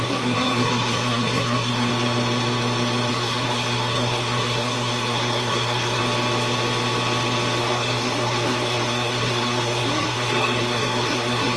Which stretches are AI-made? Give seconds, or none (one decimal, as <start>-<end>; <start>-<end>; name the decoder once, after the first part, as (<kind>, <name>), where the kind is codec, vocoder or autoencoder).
0.0-1.9 (codec, SNAC); 3.1-6.0; 7.6-11.6